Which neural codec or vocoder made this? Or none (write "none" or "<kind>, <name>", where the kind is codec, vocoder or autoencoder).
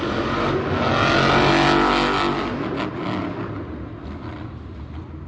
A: none